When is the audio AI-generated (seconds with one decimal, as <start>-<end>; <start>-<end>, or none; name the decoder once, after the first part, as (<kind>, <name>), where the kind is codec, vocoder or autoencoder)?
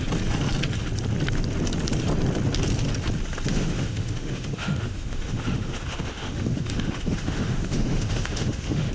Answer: 3.5-8.9 (autoencoder, DAC-VAE)